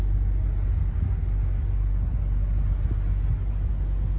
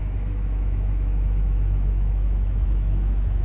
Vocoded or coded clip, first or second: second